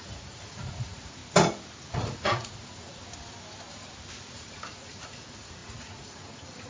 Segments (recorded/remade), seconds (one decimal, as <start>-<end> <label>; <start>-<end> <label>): 0.0-1.2 remade; 1.2-1.9 recorded; 1.9-3.0 remade; 3.0-4.3 recorded; 4.3-6.7 remade